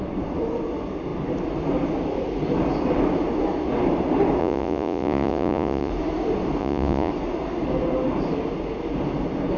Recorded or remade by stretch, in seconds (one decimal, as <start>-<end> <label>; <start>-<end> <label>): 0.0-4.4 recorded; 4.4-5.9 remade; 5.9-6.6 recorded; 6.6-7.1 remade; 7.1-9.6 recorded